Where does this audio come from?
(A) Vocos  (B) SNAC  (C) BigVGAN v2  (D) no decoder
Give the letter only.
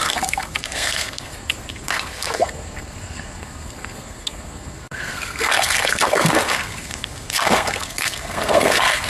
B